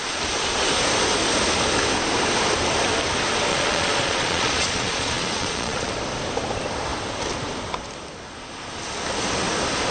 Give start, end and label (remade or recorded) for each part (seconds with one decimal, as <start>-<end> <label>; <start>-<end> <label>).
0.0-3.5 recorded; 3.5-5.9 remade; 5.9-9.9 recorded